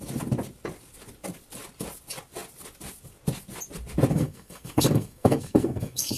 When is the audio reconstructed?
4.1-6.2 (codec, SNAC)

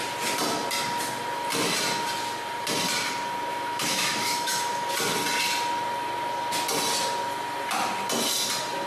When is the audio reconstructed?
3.5-4.9 (autoencoder, DAC-VAE)

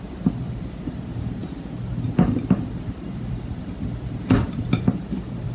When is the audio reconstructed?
0.0-1.4 (vocoder, BigVGAN v2); 2.7-5.5

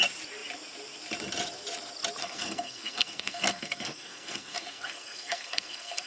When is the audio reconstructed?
2.2-6.1 (codec, SNAC)